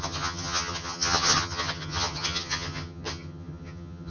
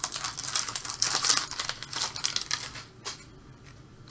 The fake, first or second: first